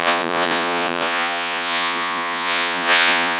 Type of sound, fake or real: fake